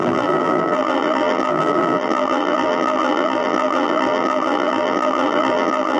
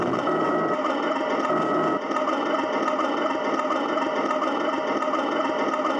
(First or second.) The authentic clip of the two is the second